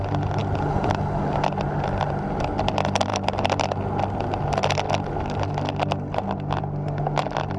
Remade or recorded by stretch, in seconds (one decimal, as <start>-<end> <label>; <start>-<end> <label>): 0.0-7.6 recorded